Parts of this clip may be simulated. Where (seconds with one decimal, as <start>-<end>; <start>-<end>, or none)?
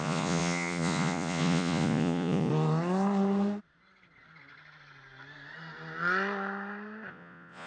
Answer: 0.0-2.5; 7.1-7.7